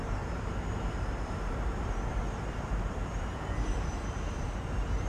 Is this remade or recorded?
remade